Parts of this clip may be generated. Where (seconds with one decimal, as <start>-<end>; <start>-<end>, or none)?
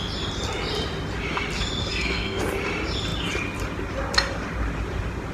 1.8-2.4